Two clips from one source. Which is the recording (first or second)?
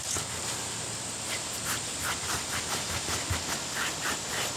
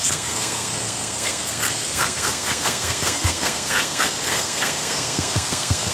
first